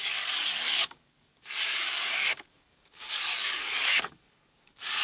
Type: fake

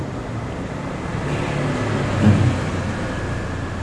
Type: real